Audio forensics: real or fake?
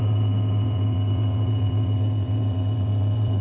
fake